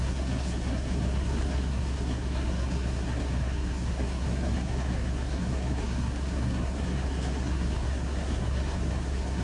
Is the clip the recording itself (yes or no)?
no